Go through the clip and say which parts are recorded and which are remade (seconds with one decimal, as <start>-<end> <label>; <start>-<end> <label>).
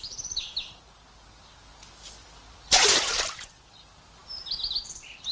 0.0-5.3 recorded